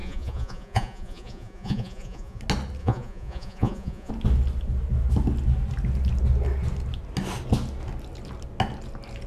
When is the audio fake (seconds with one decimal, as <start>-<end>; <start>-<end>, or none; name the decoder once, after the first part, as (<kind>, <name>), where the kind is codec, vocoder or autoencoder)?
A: 0.0-2.4 (vocoder, Vocos); 2.8-4.1